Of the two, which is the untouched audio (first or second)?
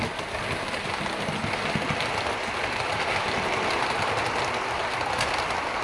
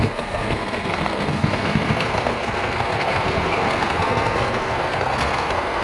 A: first